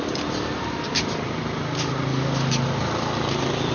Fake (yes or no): no